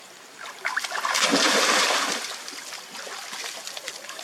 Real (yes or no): yes